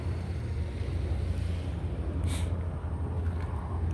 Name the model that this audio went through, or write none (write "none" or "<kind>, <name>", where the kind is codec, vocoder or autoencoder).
none